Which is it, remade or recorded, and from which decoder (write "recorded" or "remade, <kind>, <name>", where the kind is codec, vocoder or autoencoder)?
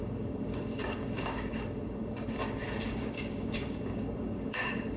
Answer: remade, codec, DAC